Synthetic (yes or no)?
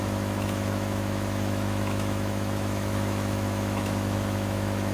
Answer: yes